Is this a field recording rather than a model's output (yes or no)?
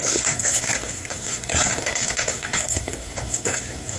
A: no